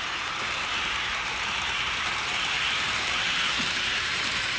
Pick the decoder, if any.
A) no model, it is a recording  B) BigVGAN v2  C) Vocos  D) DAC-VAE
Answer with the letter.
B